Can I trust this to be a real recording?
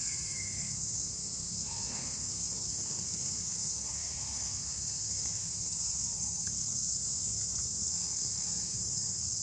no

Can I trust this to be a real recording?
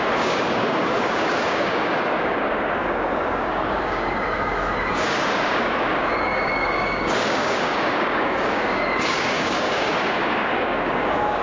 no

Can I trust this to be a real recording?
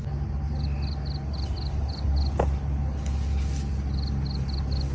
yes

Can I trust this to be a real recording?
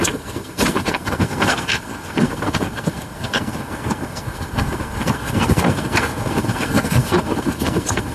no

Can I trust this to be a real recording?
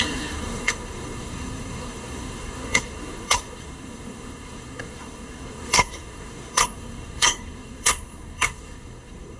no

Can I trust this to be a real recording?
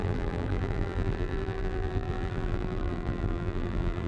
no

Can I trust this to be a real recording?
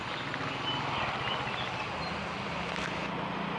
yes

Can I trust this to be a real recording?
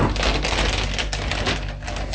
yes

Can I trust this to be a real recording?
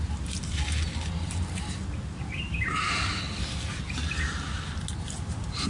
yes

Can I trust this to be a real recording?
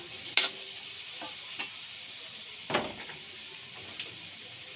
no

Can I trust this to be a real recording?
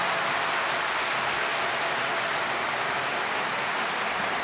yes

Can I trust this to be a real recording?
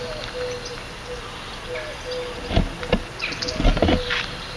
yes